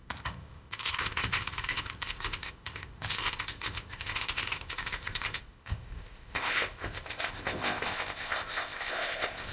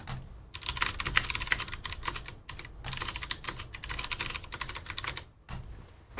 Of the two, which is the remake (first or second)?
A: first